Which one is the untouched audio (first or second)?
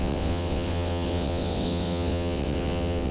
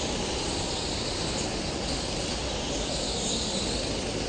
second